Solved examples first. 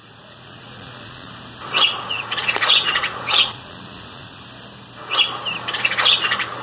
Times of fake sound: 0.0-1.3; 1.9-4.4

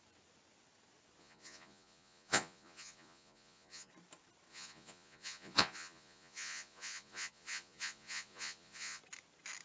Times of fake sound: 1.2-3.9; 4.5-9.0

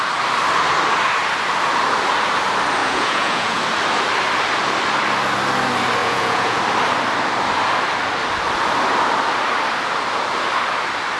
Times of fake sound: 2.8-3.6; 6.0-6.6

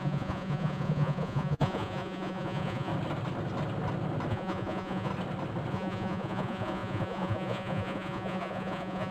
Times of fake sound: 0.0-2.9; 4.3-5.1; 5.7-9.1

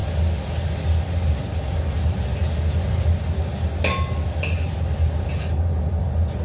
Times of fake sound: none